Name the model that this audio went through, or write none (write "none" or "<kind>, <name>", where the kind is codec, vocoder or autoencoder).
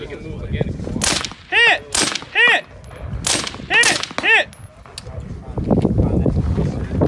none